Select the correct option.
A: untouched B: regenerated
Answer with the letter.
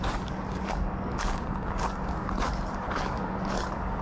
B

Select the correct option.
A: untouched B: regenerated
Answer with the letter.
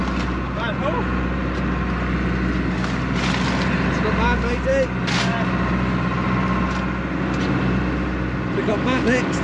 A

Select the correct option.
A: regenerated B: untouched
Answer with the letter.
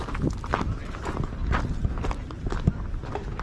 B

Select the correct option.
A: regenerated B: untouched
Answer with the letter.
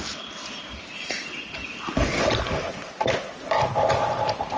B